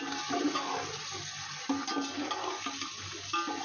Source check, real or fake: real